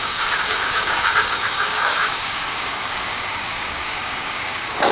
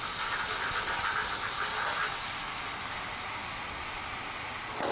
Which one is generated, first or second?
first